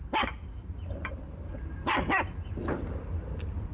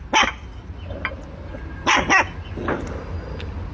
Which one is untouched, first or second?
second